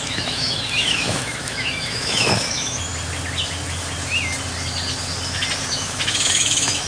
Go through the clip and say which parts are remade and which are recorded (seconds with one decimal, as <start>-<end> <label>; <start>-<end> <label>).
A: 0.0-2.9 remade; 2.9-5.7 recorded; 5.7-6.9 remade